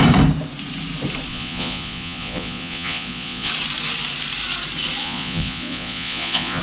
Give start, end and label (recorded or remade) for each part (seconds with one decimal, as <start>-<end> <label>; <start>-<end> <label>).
0.0-1.3 recorded; 1.3-3.5 remade; 3.5-5.0 recorded; 5.0-6.6 remade